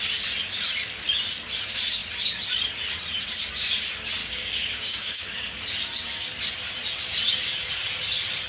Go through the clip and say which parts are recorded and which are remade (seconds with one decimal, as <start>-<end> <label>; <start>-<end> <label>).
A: 0.0-4.2 recorded; 4.2-5.6 remade; 5.6-8.5 recorded